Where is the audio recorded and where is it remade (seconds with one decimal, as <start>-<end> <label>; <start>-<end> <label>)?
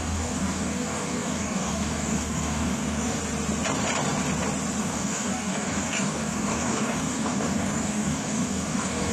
0.0-3.2 remade; 3.2-4.8 recorded; 4.8-9.1 remade